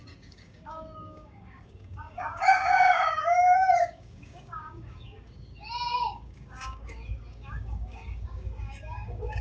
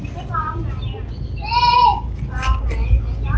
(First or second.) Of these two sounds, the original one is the second